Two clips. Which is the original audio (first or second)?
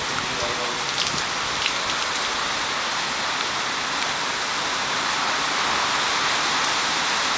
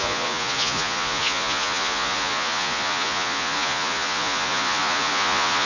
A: first